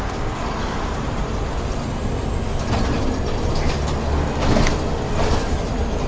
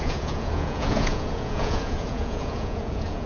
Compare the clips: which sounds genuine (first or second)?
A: first